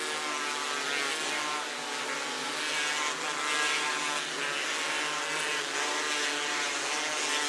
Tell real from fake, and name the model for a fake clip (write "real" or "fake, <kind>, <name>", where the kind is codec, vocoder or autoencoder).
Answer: real